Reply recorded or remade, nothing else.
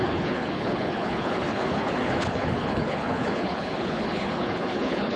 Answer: remade